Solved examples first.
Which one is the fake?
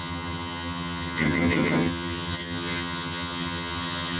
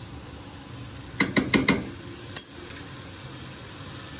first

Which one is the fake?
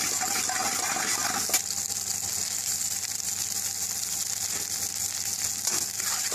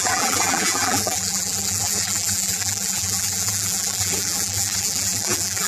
second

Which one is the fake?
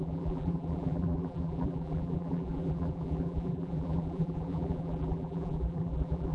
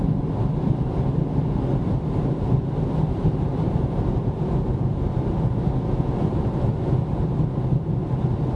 first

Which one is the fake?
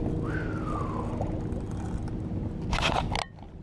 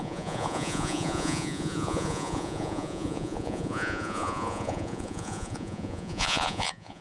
second